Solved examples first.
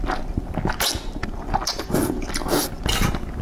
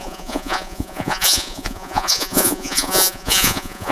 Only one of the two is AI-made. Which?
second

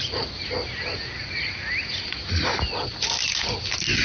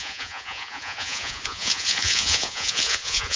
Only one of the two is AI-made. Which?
second